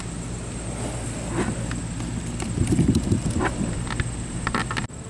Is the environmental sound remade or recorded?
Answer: recorded